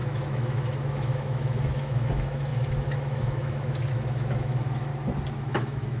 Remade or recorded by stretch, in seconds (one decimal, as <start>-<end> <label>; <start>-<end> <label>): 0.0-4.9 remade; 4.9-5.4 recorded; 5.4-6.0 remade